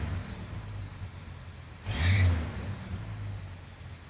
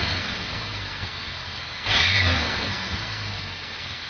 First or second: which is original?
first